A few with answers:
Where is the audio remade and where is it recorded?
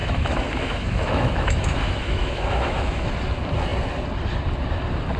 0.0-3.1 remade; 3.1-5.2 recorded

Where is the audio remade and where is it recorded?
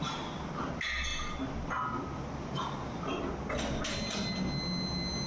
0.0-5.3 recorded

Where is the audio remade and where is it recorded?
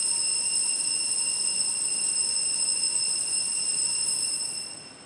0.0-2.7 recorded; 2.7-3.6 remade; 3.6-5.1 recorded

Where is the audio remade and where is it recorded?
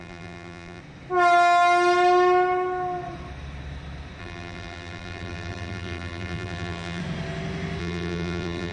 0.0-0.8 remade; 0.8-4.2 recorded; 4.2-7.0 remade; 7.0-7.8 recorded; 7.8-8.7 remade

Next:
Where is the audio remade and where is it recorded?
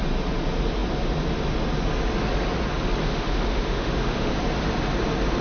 0.0-3.0 recorded; 3.0-4.3 remade; 4.3-5.4 recorded